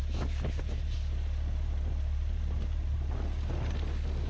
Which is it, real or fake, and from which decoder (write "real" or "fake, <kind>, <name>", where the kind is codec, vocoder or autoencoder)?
real